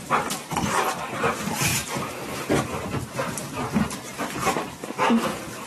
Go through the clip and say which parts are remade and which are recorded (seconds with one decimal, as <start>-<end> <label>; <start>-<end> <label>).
0.0-0.6 remade; 0.6-1.7 recorded; 1.7-2.5 remade; 2.5-5.7 recorded